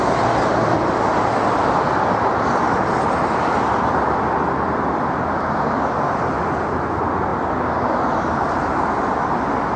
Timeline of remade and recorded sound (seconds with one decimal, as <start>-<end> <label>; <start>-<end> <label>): 0.0-9.8 recorded